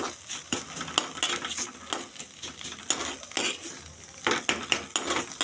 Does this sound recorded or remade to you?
recorded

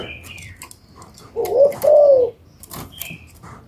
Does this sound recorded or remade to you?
recorded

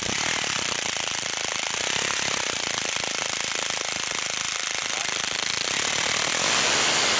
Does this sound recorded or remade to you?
remade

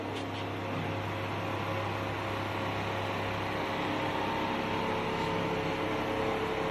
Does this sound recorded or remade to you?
recorded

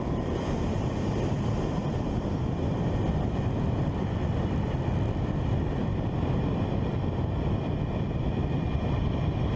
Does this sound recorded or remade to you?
remade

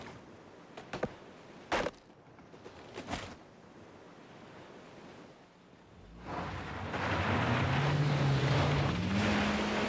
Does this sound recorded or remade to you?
recorded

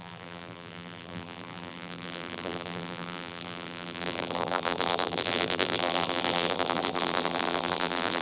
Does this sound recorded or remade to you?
remade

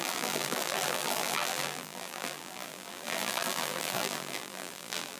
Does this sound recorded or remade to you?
remade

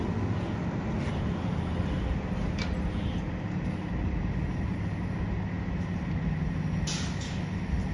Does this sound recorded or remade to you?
recorded